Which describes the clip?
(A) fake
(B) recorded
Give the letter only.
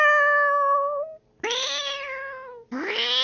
B